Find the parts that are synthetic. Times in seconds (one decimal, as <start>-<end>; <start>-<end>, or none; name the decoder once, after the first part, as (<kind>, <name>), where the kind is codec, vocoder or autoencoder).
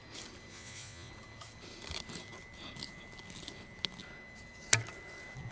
0.5-1.1 (vocoder, Vocos)